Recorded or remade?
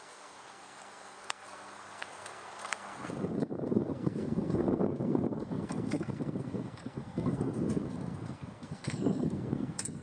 remade